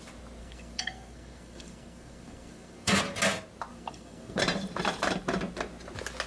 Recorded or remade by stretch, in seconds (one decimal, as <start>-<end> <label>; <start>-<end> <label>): 0.0-0.4 recorded; 0.4-3.0 remade; 3.0-3.7 recorded; 3.7-4.4 remade; 4.4-6.3 recorded

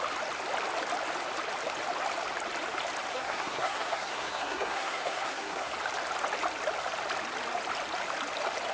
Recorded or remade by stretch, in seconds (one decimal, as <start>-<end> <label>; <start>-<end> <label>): 0.0-3.1 recorded; 3.1-5.7 remade; 5.7-8.7 recorded

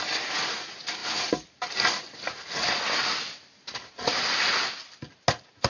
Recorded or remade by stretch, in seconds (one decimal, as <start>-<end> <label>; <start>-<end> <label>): 0.0-5.7 recorded

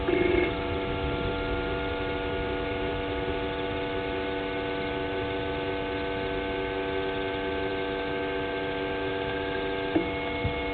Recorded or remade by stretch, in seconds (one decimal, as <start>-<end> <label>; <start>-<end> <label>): 0.0-10.7 recorded

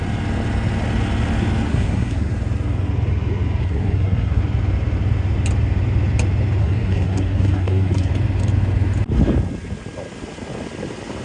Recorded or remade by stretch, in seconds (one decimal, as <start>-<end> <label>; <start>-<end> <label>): 0.0-1.7 recorded; 1.7-2.3 remade; 2.3-3.6 recorded; 3.6-4.4 remade; 4.4-6.6 recorded; 6.6-8.1 remade; 8.1-11.2 recorded